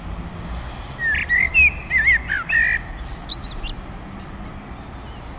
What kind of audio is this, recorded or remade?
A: recorded